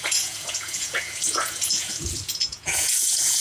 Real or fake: fake